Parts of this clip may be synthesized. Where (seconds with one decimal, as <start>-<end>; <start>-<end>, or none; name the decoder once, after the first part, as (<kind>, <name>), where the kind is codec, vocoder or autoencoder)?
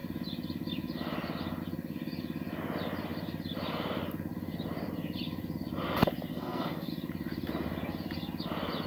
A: 6.3-6.9 (codec, SNAC)